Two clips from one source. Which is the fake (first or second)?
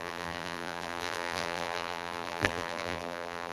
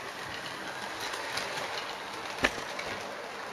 first